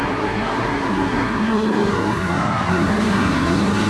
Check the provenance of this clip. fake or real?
fake